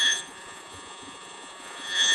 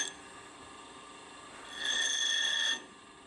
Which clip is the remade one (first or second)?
first